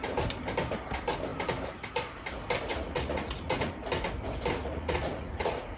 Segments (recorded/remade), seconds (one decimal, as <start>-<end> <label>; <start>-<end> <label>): 0.0-2.7 recorded; 2.7-3.7 remade; 3.7-4.6 recorded; 4.6-5.8 remade